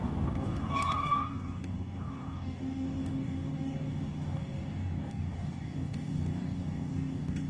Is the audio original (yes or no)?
no